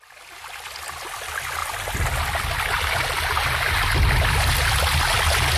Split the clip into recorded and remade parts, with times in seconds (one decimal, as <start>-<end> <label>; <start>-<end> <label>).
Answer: 0.0-5.6 recorded